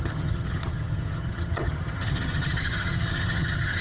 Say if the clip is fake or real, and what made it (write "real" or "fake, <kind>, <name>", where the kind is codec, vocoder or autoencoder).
fake, vocoder, HiFi-GAN